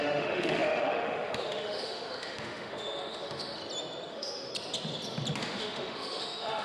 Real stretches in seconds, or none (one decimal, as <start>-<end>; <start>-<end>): 3.6-4.1; 4.5-5.4